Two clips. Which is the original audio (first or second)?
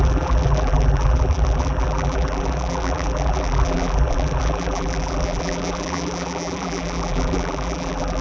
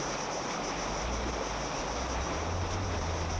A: second